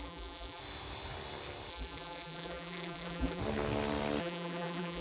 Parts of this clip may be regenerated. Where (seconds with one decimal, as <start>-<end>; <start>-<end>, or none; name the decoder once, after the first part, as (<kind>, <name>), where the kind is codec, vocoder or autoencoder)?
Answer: 0.0-0.6 (vocoder, BigVGAN v2); 1.7-3.4; 4.2-5.0